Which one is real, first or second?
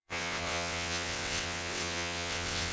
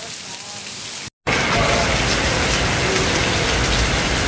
second